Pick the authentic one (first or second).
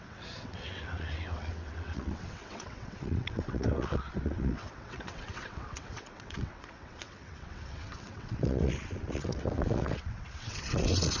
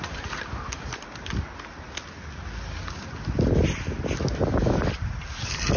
second